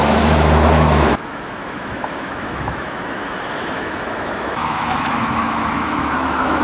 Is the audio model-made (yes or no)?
yes